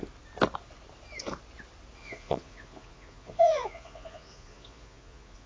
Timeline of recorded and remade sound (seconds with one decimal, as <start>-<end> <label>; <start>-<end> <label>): 0.0-2.0 recorded; 2.0-5.5 remade